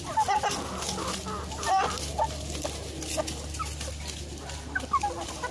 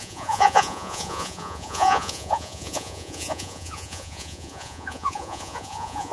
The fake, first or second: second